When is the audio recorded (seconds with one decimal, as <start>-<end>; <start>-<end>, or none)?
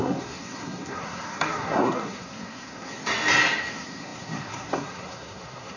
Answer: 3.0-3.6